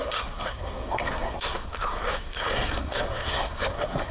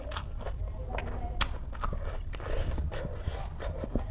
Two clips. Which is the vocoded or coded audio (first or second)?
first